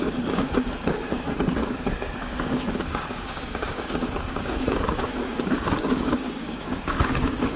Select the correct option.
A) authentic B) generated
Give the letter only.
B